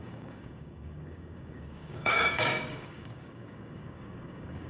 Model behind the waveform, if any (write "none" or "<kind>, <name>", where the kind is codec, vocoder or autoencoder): codec, DAC